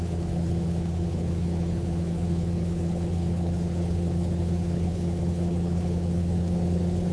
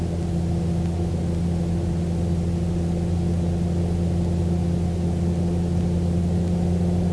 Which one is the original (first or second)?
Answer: second